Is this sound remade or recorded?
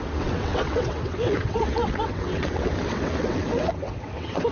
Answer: remade